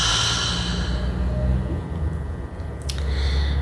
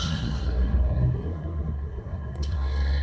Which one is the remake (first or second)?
second